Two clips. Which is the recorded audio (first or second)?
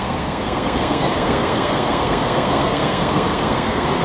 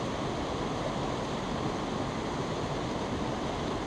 second